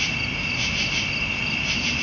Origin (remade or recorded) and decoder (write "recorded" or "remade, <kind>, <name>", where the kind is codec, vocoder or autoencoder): recorded